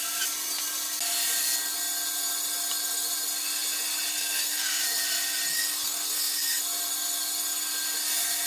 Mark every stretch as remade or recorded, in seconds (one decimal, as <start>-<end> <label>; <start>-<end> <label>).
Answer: 0.0-4.1 recorded; 4.1-4.8 remade; 4.8-5.5 recorded; 5.5-6.6 remade; 6.6-8.5 recorded